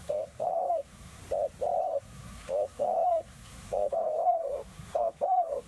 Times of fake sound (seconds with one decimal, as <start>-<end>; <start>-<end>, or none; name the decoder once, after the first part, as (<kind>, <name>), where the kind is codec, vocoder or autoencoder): 0.0-1.2 (codec, SNAC); 1.8-5.7